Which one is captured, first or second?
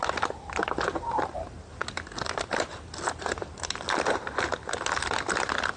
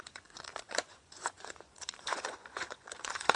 first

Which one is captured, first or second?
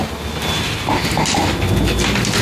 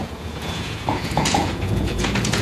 first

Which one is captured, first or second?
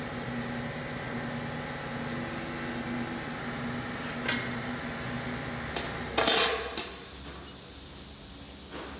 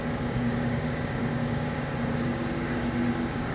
first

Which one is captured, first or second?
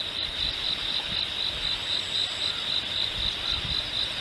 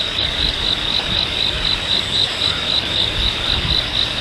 first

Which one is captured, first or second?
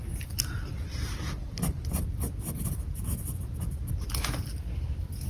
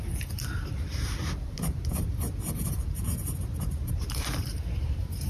first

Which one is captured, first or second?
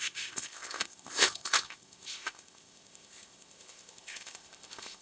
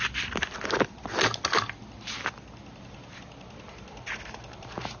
second